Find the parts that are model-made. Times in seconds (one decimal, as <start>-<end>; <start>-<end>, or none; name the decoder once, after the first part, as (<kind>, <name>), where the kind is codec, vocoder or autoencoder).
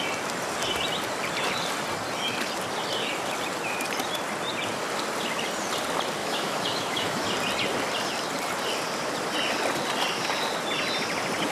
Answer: 6.2-7.3 (autoencoder, DAC-VAE)